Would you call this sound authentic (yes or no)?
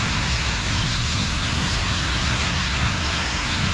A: no